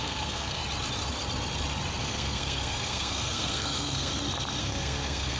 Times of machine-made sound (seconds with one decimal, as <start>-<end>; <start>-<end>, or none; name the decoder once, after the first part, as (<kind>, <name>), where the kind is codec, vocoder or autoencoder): 0.0-0.6 (codec, SNAC); 2.0-4.1; 4.6-5.4